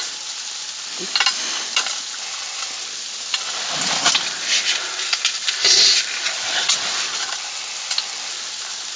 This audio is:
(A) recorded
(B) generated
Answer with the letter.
A